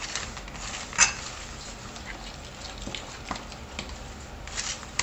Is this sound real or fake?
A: real